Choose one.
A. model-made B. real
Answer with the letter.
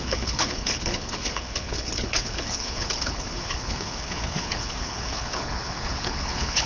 A